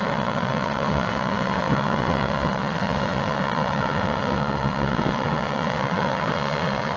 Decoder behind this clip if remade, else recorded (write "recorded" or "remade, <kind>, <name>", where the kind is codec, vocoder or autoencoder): remade, vocoder, WaveNeXt